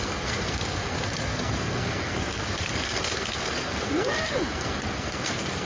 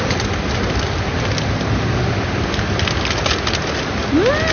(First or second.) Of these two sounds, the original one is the second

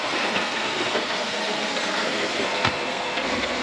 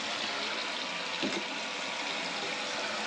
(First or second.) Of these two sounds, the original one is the second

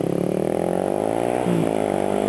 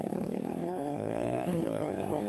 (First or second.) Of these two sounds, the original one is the first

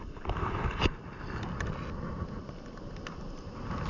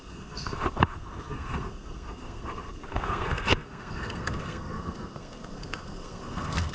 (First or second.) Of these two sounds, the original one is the first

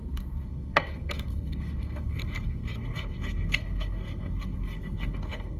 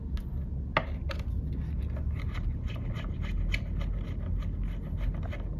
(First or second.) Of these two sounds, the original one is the second